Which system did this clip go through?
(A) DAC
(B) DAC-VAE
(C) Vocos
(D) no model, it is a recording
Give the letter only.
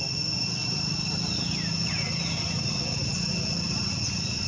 D